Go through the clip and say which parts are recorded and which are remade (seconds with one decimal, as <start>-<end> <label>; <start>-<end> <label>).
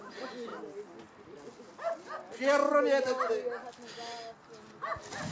0.0-5.3 recorded